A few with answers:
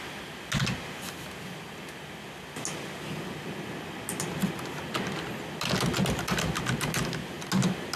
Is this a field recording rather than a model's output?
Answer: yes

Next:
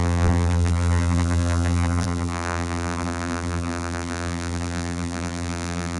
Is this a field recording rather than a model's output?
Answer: no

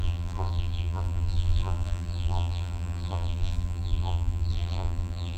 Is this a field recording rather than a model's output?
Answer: no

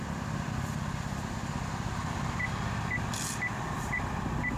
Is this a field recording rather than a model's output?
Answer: no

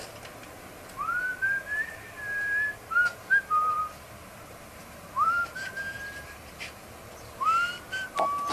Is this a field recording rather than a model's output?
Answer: yes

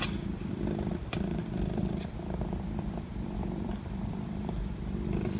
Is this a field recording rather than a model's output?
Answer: no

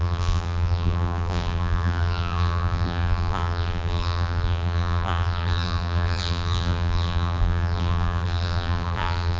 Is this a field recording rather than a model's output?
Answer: no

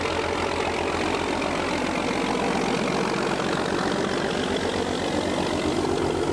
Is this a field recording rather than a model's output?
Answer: yes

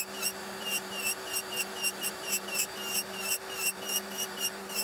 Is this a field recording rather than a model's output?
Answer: no